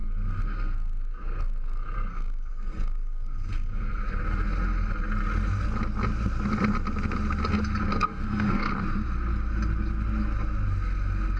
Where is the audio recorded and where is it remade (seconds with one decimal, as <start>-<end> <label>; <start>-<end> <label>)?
0.0-4.2 remade; 4.2-7.9 recorded; 7.9-8.7 remade; 8.7-11.4 recorded